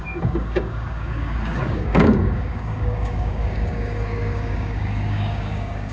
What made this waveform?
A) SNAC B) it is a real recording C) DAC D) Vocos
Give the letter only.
C